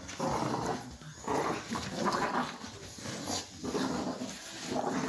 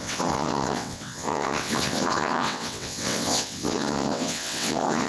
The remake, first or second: second